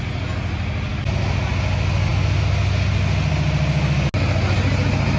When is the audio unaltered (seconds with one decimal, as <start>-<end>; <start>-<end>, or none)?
0.0-5.2